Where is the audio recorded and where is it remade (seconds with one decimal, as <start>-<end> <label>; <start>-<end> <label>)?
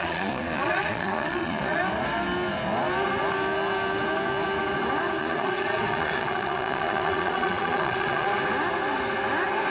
0.0-1.8 remade; 1.8-5.2 recorded; 5.2-8.3 remade; 8.3-9.7 recorded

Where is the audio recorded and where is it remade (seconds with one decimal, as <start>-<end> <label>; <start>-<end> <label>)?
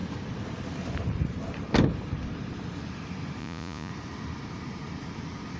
0.0-3.4 recorded; 3.4-3.9 remade; 3.9-5.6 recorded